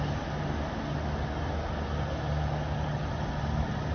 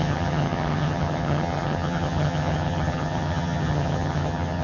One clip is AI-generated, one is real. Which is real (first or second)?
first